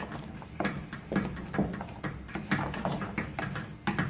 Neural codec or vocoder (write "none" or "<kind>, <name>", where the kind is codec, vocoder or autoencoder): none